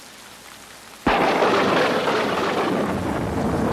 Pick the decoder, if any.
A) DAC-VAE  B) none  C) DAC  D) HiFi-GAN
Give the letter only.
B